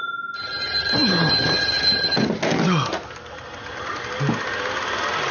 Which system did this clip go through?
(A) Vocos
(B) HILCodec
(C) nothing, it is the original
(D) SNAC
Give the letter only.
C